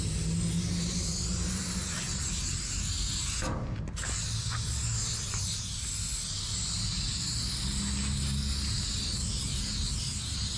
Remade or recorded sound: recorded